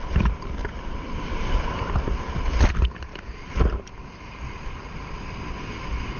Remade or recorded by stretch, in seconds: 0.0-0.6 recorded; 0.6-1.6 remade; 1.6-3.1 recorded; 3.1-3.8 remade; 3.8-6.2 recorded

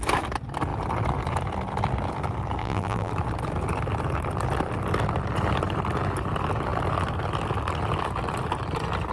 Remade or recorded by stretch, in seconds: 0.0-2.6 recorded; 2.6-3.1 remade; 3.1-9.1 recorded

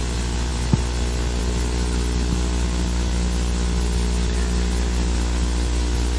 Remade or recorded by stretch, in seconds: 0.0-6.2 recorded